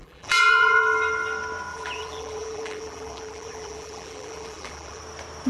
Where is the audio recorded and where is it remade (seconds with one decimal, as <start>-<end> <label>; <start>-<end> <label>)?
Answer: 0.0-0.8 remade; 0.8-1.7 recorded; 1.7-5.0 remade; 5.0-5.5 recorded